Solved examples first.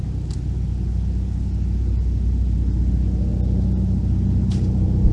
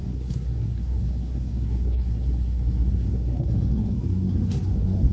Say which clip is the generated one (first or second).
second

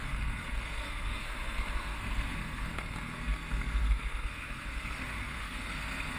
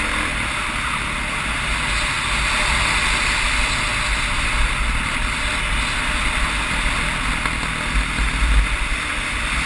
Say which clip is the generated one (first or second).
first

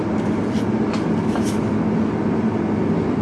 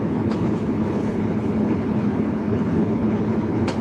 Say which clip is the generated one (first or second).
second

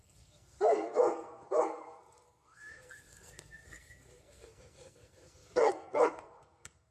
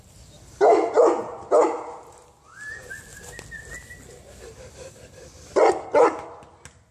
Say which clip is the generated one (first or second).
first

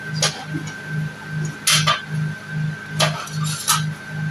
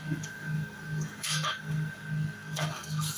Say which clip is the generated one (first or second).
second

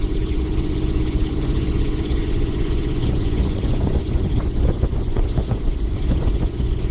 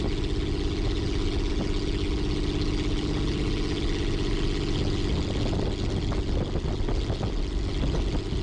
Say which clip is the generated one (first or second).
first